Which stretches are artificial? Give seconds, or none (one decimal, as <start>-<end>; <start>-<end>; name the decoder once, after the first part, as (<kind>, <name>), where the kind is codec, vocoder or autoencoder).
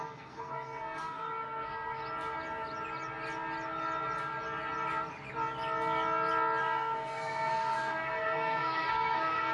0.0-2.0 (codec, SNAC); 6.6-9.5